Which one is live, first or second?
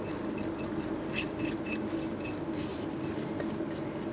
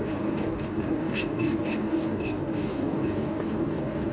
first